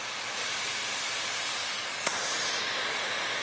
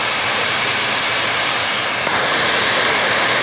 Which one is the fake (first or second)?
second